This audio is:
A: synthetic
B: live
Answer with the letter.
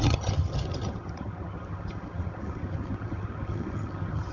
A